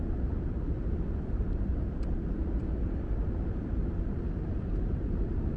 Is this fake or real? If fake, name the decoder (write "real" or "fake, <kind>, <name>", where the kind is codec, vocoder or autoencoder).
real